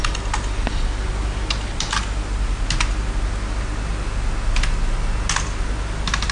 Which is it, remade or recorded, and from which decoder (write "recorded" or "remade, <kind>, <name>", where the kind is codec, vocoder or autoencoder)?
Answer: recorded